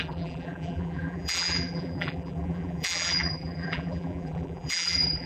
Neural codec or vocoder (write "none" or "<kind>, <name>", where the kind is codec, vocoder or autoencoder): vocoder, BigVGAN v2